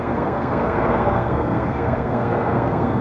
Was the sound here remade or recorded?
remade